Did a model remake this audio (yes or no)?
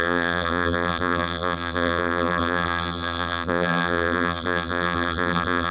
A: yes